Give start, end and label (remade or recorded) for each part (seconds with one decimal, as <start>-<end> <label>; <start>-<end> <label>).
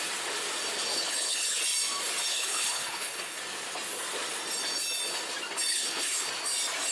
0.0-0.9 recorded; 0.9-1.6 remade; 1.6-2.3 recorded; 2.3-3.4 remade; 3.4-5.7 recorded; 5.7-6.3 remade; 6.3-6.9 recorded